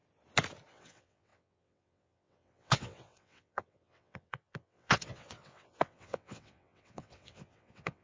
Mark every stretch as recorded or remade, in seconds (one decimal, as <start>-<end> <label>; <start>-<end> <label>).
0.0-0.7 recorded; 0.7-8.0 remade